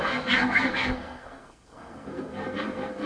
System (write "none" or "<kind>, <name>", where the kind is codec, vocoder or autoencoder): codec, SNAC